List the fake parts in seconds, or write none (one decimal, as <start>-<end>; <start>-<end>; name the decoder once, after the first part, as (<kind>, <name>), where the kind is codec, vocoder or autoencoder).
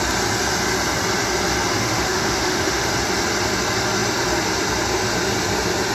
1.8-2.9 (autoencoder, DAC-VAE)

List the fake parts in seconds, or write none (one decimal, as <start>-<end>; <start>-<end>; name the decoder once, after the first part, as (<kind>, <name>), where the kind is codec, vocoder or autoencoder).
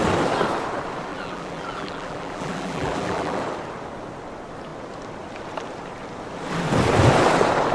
1.1-3.4 (vocoder, BigVGAN v2)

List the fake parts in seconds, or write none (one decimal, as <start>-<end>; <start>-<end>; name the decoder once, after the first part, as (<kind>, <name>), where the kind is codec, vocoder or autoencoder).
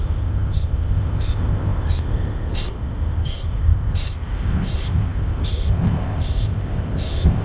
0.0-7.4 (codec, ZipCodec)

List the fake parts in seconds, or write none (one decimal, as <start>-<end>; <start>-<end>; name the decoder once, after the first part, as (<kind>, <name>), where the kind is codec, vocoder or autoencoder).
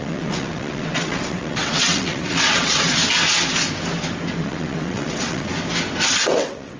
0.0-3.0 (vocoder, WaveNeXt); 4.4-5.5; 6.1-6.8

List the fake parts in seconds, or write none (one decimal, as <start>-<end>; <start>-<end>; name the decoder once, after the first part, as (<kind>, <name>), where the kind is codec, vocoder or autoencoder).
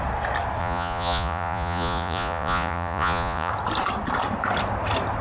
0.6-3.5 (vocoder, Vocos)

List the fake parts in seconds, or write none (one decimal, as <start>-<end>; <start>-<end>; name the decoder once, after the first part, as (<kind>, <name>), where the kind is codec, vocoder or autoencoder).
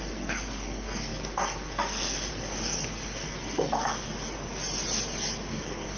0.0-4.1 (codec, SNAC); 5.5-6.0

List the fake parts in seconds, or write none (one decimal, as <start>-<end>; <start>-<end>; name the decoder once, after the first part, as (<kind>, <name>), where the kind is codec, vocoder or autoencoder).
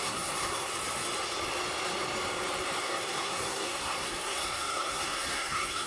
0.0-0.7 (codec, SNAC); 2.8-5.9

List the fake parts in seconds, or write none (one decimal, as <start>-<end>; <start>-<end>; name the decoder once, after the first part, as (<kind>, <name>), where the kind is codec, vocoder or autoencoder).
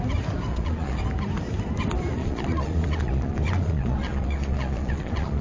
0.5-1.0 (vocoder, Vocos); 2.2-5.4